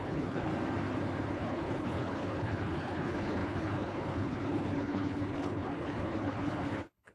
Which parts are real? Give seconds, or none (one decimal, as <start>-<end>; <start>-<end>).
0.5-1.3